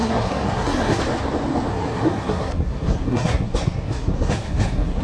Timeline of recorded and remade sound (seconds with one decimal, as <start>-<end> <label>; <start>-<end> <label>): 0.0-1.0 remade; 1.0-1.7 recorded; 1.7-5.0 remade